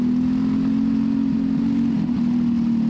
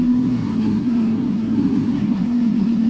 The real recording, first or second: first